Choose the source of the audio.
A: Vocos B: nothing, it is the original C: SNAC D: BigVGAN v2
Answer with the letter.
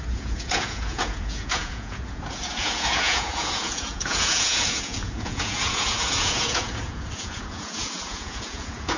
A